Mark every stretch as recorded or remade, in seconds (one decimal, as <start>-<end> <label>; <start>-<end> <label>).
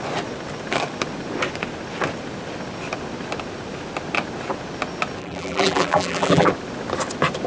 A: 0.0-5.2 recorded; 5.2-6.5 remade; 6.5-7.5 recorded